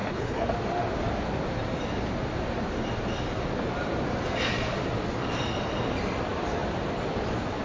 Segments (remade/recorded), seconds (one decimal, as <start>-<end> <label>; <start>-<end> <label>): 0.0-0.5 remade; 0.5-7.6 recorded